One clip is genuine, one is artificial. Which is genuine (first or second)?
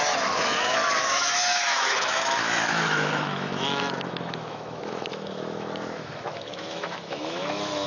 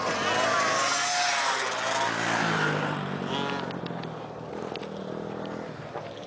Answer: second